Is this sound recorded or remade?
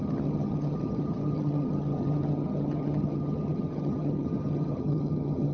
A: remade